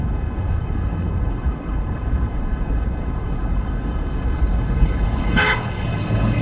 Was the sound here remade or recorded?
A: remade